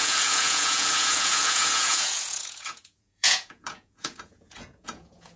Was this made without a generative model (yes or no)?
no